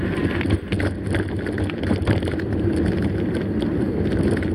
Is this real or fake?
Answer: real